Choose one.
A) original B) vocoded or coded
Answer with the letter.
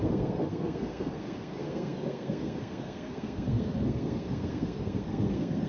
B